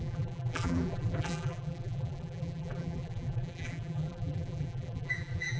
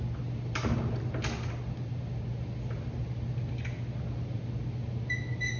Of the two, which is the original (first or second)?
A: second